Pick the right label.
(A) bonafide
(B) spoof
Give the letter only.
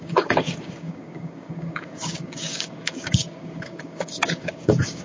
B